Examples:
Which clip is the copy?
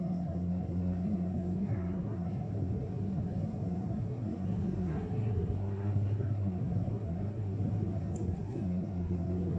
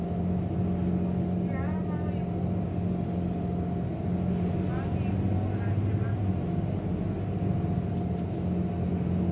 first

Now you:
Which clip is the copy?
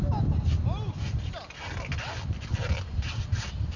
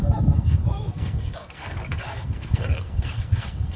second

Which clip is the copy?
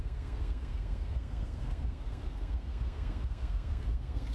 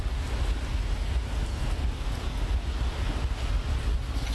first